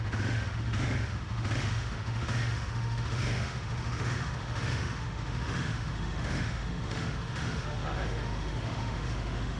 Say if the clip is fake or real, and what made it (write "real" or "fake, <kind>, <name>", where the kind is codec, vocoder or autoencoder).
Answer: fake, autoencoder, DAC-VAE